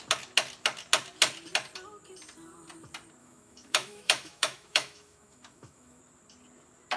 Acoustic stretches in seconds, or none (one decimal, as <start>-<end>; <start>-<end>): 0.0-3.2; 6.0-7.0

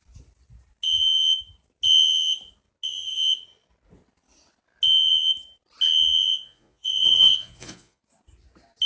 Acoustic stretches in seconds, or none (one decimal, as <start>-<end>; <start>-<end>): 0.0-6.2; 8.0-8.9

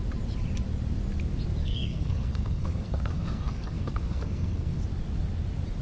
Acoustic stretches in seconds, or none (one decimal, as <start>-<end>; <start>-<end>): 0.0-1.6; 4.8-5.8

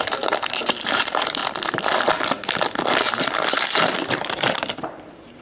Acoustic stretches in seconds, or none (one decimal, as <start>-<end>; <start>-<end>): 1.4-4.2

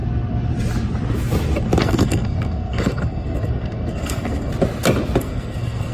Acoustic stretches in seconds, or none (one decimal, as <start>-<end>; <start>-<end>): 0.0-1.8; 4.5-5.2

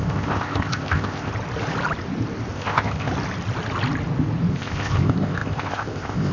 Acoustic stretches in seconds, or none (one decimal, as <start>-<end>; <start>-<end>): 1.3-2.5; 3.1-4.5